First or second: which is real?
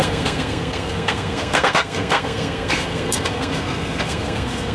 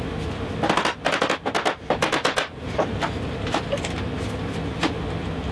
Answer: second